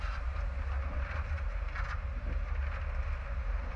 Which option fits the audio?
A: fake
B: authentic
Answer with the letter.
B